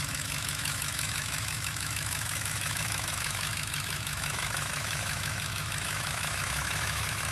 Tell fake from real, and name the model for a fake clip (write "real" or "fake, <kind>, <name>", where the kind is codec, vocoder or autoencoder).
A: fake, autoencoder, DAC-VAE